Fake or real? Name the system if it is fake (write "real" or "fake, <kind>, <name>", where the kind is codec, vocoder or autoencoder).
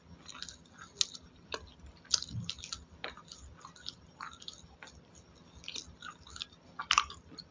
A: real